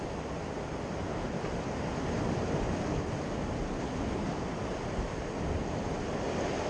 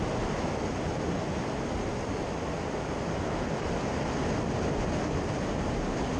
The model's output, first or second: first